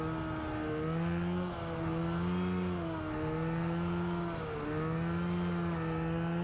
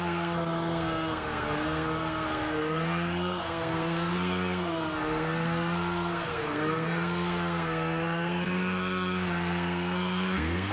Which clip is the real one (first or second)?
first